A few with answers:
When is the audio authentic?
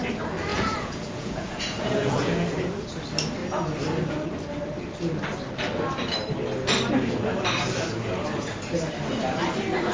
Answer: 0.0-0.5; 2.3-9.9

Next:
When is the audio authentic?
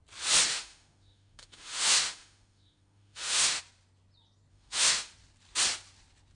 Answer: 0.0-0.5; 3.6-4.5; 5.1-6.3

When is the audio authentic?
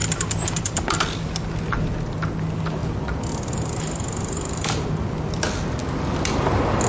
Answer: 0.0-6.9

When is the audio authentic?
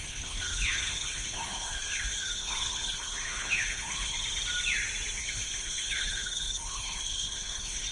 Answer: 4.2-5.2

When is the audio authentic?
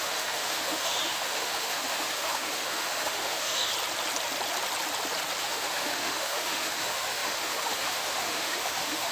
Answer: 3.7-5.4